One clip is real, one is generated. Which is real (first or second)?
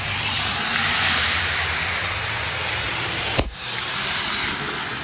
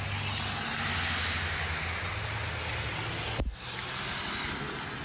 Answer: second